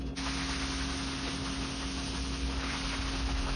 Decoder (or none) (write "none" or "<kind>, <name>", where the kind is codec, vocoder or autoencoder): none